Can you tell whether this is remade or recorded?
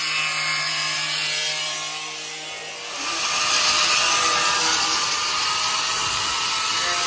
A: recorded